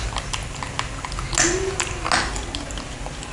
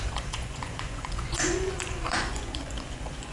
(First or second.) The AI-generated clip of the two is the second